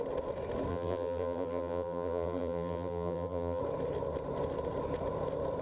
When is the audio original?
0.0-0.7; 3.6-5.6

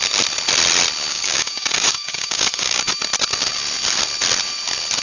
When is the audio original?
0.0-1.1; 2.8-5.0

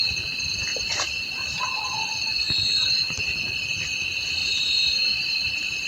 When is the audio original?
0.0-0.7; 1.8-4.4

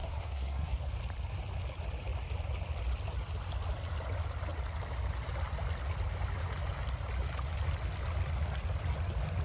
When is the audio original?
0.8-9.4

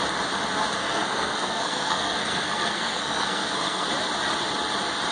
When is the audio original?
0.0-0.8; 3.9-5.1

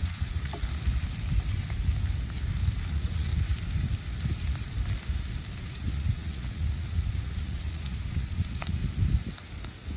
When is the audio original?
0.5-2.9; 3.3-5.6; 8.8-10.0